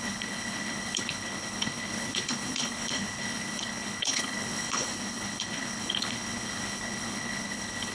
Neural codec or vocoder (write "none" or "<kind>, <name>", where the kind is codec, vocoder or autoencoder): codec, HILCodec